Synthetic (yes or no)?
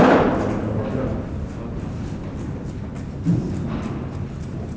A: no